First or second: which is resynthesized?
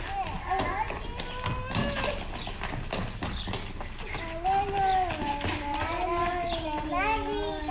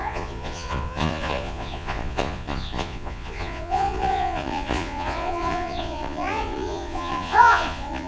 second